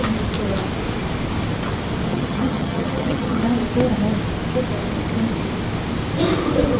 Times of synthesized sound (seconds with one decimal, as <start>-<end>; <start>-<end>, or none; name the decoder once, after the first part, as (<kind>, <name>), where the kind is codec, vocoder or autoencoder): 2.1-3.4 (vocoder, HiFi-GAN)